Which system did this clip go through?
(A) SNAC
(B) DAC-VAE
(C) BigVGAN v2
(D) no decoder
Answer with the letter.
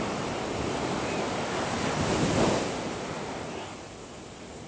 D